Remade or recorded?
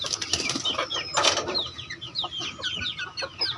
recorded